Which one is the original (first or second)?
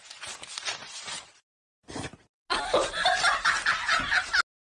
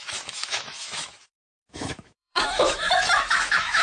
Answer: first